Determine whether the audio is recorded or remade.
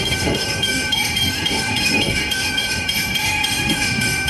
remade